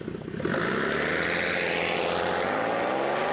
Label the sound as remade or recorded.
recorded